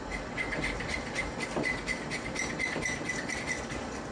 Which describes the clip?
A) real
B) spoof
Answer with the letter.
A